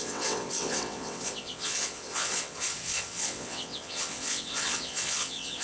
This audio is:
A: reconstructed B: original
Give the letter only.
A